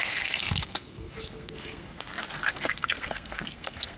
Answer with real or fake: fake